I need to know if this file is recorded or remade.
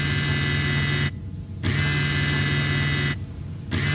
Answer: recorded